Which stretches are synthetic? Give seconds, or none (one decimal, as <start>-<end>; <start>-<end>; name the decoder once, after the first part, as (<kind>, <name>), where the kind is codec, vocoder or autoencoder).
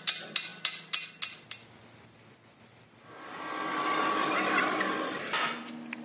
none